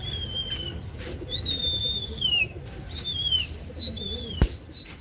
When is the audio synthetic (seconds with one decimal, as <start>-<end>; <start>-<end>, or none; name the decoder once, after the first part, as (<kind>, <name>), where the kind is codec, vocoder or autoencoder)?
none